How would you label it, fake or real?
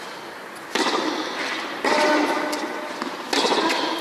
real